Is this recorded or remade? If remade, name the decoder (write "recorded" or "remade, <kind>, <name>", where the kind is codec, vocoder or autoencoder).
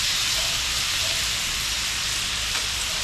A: remade, vocoder, BigVGAN v2